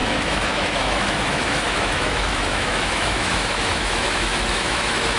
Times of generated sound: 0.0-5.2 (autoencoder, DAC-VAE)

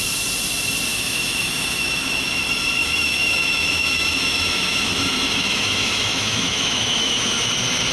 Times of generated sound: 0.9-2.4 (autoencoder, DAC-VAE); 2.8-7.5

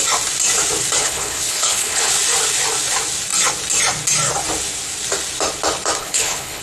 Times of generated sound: 1.0-2.1 (codec, HILCodec); 6.0-6.6